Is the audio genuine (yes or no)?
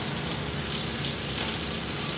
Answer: yes